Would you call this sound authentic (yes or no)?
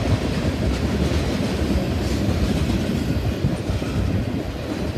yes